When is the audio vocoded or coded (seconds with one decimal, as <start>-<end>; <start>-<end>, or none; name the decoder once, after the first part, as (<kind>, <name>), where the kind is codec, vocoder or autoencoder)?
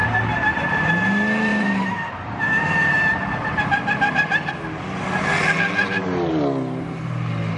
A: 0.0-0.8 (vocoder, BigVGAN v2); 1.5-4.5; 5.8-6.3